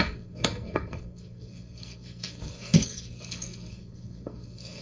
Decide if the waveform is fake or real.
fake